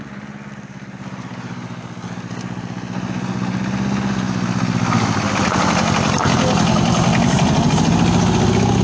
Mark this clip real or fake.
real